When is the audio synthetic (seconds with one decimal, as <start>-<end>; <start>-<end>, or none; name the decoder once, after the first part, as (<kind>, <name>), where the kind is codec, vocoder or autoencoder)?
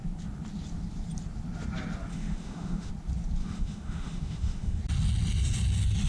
2.1-2.9 (autoencoder, DAC-VAE); 3.4-4.8